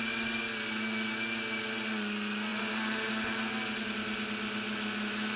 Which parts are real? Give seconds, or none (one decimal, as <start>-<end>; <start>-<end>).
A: 0.0-2.5; 3.1-5.4